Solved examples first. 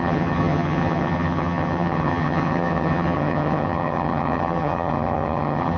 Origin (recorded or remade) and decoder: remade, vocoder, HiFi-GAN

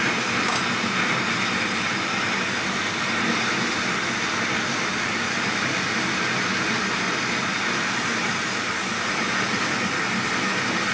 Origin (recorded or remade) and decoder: recorded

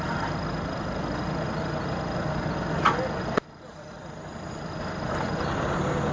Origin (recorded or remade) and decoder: recorded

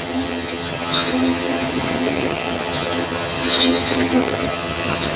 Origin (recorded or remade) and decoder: remade, vocoder, HiFi-GAN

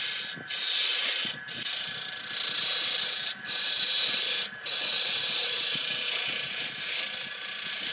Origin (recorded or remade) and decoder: recorded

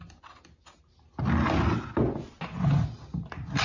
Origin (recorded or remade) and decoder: recorded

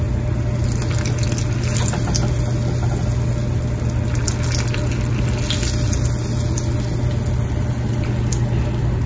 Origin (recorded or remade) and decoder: recorded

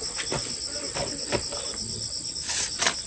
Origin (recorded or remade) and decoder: recorded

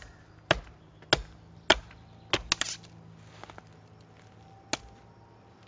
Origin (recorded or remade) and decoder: recorded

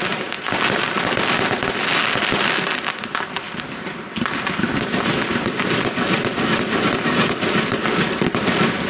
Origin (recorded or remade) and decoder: recorded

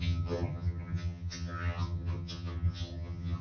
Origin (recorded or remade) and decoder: remade, vocoder, HiFi-GAN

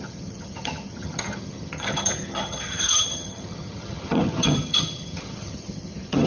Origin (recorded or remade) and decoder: remade, vocoder, HiFi-GAN